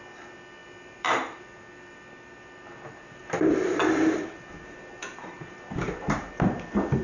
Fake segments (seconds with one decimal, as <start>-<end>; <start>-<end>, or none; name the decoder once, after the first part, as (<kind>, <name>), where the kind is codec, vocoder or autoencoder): 0.6-4.3 (vocoder, BigVGAN v2); 5.0-6.3